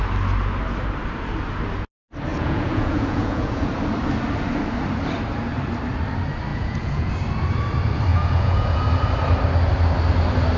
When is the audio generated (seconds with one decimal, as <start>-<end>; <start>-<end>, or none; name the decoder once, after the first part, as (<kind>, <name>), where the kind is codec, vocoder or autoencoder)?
2.3-3.7 (vocoder, Vocos); 6.5-7.1; 8.1-8.8